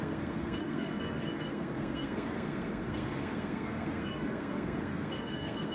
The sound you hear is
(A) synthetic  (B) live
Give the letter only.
A